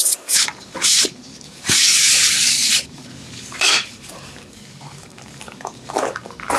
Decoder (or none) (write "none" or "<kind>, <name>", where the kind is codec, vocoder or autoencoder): codec, DAC